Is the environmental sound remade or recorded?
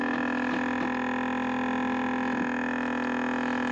recorded